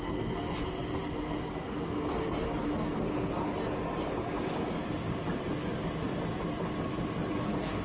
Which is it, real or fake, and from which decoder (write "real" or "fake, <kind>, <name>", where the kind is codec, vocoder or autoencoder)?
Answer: real